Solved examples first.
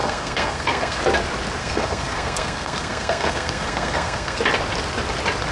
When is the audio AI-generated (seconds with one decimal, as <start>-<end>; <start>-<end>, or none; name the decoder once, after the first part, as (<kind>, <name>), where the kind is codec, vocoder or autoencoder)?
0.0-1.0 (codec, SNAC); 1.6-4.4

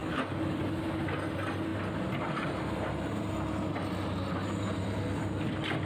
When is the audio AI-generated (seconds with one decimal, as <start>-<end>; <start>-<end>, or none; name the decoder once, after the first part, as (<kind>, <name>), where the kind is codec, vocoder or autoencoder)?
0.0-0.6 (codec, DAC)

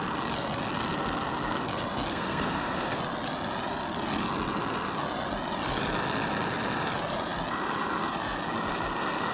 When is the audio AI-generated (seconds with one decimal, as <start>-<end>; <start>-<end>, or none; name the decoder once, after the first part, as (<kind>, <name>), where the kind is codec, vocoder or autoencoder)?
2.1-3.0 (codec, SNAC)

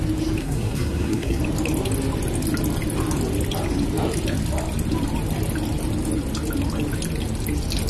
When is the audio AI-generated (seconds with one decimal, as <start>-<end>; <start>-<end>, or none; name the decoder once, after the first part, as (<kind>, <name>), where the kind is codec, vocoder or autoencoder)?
0.4-1.4 (codec, SNAC)